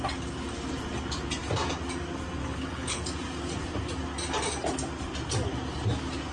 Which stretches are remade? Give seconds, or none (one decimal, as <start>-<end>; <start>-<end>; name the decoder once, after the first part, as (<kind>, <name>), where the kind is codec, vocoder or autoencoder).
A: 2.4-3.0 (codec, HILCodec)

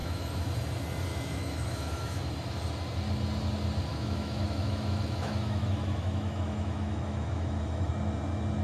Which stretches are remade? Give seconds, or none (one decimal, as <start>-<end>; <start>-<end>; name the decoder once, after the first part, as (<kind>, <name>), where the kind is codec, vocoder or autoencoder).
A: 0.0-0.5 (autoencoder, DAC-VAE); 1.1-2.3; 3.9-7.9

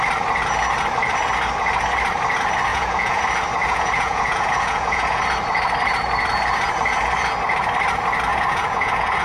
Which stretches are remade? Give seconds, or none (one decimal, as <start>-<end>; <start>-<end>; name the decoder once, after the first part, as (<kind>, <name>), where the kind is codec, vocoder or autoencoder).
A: 2.7-3.2 (vocoder, Vocos); 3.6-5.2; 8.3-9.2

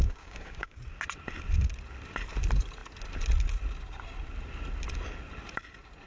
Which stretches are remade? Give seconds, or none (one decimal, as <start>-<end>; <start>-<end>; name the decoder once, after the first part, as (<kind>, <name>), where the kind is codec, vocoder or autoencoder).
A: 0.0-0.8 (codec, DAC)